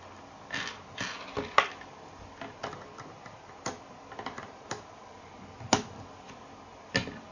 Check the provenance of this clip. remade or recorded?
recorded